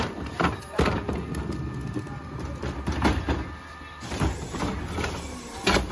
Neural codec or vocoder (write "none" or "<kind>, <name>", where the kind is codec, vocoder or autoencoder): none